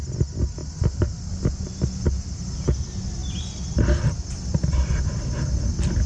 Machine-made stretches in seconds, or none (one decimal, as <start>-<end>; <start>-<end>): none